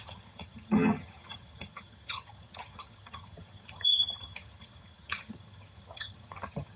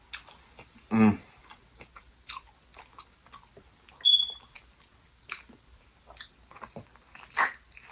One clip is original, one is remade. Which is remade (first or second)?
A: first